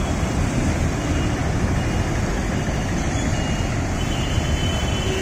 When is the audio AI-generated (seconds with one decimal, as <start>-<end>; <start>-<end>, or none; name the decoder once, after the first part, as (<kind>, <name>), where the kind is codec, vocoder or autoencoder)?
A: none